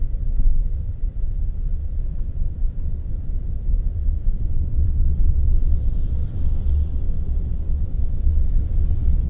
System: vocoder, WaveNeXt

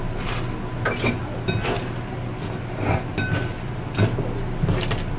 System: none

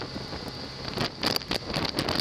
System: none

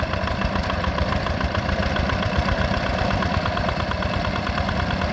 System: vocoder, BigVGAN v2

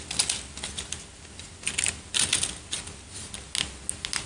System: none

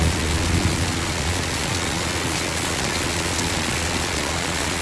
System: vocoder, Vocos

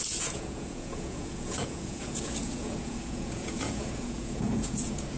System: vocoder, Vocos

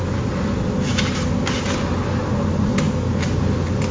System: none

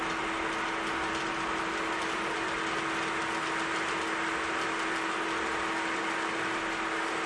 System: none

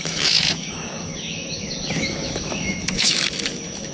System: autoencoder, DAC-VAE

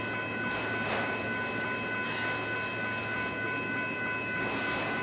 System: none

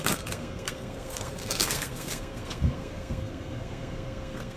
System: codec, SNAC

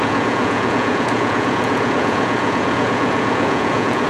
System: vocoder, Vocos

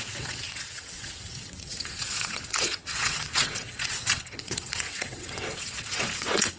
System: vocoder, WaveNeXt